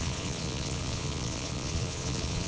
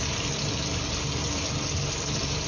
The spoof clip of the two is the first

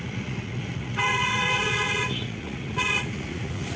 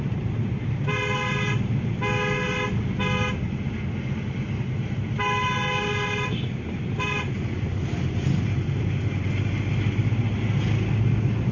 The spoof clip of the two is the first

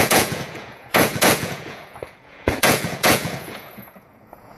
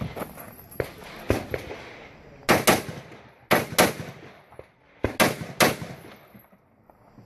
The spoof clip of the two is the first